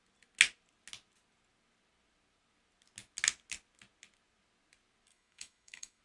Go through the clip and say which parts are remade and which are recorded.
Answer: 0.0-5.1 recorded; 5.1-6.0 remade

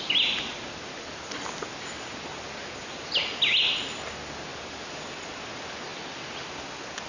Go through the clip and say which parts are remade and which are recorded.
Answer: 0.0-4.5 recorded; 4.5-5.2 remade; 5.2-5.9 recorded; 5.9-6.6 remade; 6.6-7.1 recorded

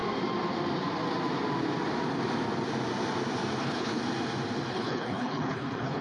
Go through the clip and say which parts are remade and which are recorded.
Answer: 0.0-3.6 recorded; 3.6-4.0 remade; 4.0-4.7 recorded; 4.7-6.0 remade

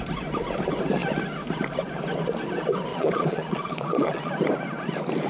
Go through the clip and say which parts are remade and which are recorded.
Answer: 0.0-2.9 recorded; 2.9-4.3 remade; 4.3-5.3 recorded

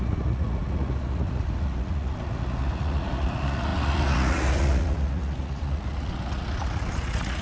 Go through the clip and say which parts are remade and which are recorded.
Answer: 0.0-7.4 remade

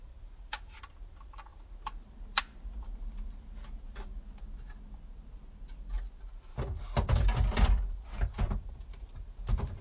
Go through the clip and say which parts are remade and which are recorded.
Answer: 0.0-4.1 remade; 4.1-8.3 recorded; 8.3-9.8 remade

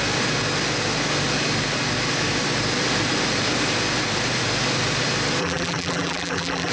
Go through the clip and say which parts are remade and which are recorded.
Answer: 0.0-5.4 recorded; 5.4-6.7 remade